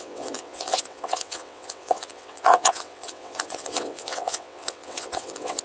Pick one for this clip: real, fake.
fake